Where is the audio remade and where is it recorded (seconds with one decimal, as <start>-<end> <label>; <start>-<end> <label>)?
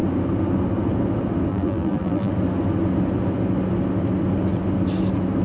0.0-1.5 recorded; 1.5-2.3 remade; 2.3-5.4 recorded